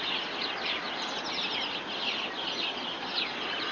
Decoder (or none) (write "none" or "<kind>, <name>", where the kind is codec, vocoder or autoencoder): none